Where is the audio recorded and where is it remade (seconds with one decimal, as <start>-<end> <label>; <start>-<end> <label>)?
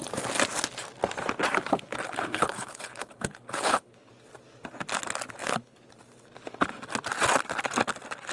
0.0-2.3 recorded; 2.3-4.1 remade; 4.1-5.4 recorded; 5.4-5.9 remade; 5.9-8.3 recorded